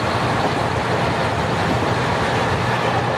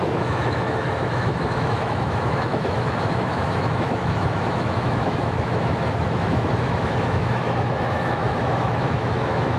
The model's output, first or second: second